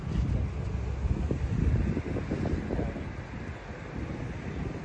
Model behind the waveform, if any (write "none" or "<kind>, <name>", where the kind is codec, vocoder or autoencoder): none